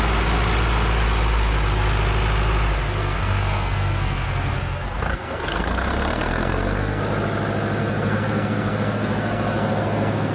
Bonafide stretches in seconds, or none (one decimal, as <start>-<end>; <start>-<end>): 0.0-3.0; 7.0-7.8